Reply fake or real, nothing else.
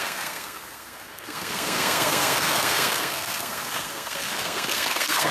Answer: fake